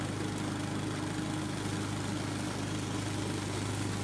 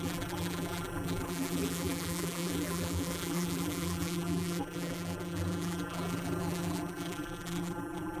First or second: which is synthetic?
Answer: second